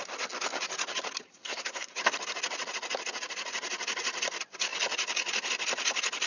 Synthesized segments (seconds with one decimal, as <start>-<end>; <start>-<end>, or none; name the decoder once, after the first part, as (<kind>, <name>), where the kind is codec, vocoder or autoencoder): 1.4-1.9 (codec, SNAC)